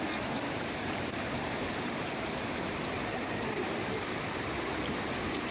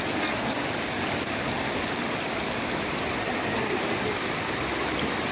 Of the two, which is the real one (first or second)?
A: second